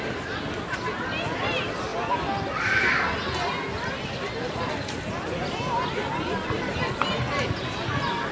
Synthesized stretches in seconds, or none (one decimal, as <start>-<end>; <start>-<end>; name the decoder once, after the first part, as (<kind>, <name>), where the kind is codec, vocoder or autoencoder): none

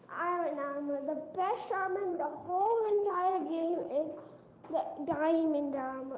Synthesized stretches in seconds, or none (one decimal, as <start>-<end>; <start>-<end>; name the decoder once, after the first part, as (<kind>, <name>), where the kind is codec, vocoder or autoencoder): 2.1-4.1 (codec, HILCodec)

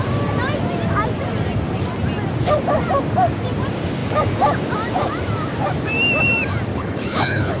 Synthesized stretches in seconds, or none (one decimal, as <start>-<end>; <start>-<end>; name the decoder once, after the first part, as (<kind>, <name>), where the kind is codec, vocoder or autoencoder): 6.7-7.6 (codec, HILCodec)

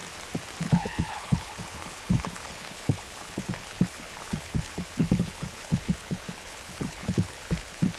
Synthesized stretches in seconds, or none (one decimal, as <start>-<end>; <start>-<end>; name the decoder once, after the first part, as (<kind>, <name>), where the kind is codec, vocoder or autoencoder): 0.6-8.0 (codec, HILCodec)

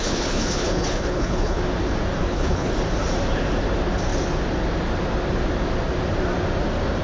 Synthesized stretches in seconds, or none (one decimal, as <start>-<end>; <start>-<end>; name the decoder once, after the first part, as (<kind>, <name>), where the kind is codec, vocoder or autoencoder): 0.0-1.6 (codec, HILCodec); 2.2-2.7

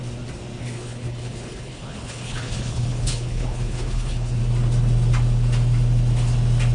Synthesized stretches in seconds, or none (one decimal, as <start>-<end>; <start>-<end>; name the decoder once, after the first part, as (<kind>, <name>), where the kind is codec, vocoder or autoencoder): 0.6-4.4 (codec, HILCodec)

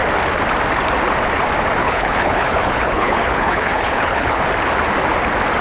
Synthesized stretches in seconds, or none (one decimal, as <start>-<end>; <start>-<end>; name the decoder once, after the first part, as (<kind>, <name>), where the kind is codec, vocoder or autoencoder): 1.8-4.4 (codec, HILCodec)